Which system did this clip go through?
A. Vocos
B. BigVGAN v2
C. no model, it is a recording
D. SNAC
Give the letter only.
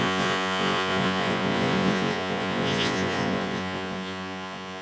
A